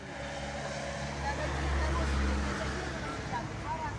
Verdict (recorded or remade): recorded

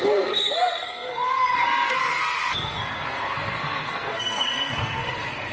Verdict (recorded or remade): remade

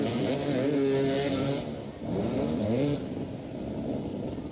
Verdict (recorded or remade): remade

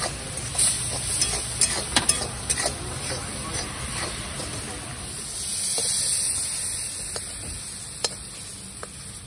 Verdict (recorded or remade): recorded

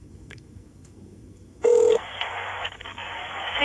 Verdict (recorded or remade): remade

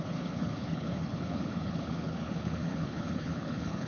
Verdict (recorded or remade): remade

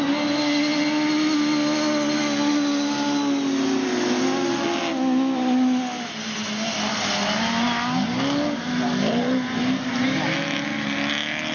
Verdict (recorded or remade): recorded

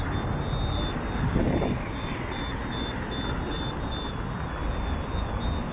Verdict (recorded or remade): recorded